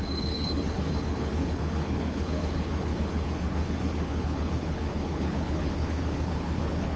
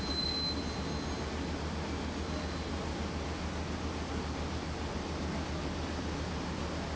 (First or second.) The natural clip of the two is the second